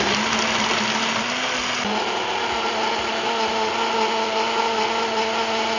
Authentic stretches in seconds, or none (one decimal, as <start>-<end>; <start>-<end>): 0.0-5.8